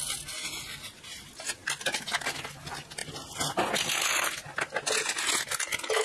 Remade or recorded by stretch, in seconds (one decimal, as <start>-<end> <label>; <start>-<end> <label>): 0.0-6.0 recorded